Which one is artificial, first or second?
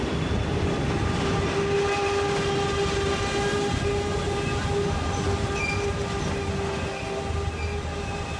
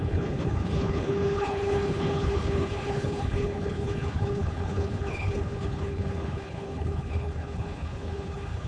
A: second